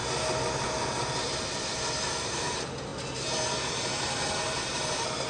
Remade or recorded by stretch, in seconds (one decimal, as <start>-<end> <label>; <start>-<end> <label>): 0.0-1.7 recorded; 1.7-2.9 remade; 2.9-3.6 recorded; 3.6-5.3 remade